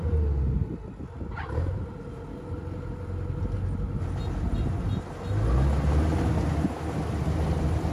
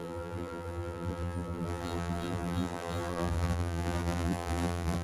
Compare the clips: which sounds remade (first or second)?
second